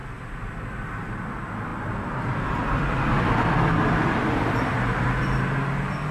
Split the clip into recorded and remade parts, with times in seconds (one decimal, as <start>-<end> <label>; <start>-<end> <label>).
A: 0.0-1.7 recorded; 1.7-5.4 remade; 5.4-6.1 recorded